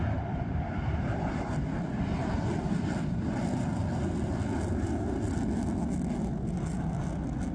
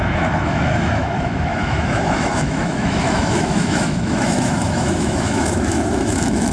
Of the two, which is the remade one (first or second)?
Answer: second